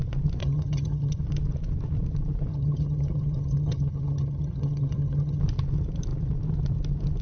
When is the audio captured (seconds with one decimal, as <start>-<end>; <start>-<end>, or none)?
0.0-0.4; 1.2-2.5; 5.4-7.2